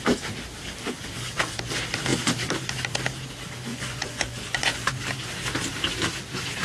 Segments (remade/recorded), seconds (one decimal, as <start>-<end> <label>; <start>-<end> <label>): 0.0-3.7 recorded; 3.7-4.9 remade; 4.9-6.6 recorded